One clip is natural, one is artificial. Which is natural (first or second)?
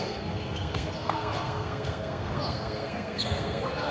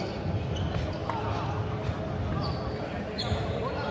second